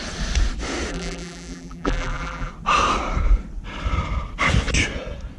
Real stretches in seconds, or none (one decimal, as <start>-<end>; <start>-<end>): 0.0-0.9; 2.5-5.4